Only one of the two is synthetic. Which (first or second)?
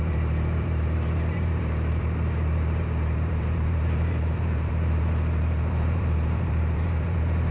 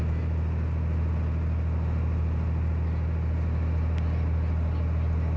first